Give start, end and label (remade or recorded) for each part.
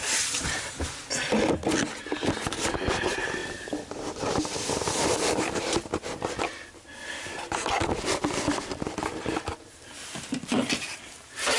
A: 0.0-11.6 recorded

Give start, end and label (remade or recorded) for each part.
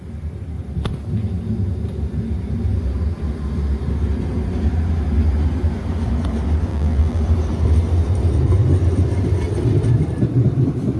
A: 0.0-6.7 recorded; 6.7-7.2 remade; 7.2-11.0 recorded